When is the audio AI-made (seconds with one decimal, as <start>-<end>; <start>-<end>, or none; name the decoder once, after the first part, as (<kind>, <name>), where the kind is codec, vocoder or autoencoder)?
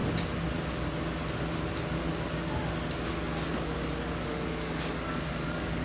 3.5-5.8 (codec, DAC)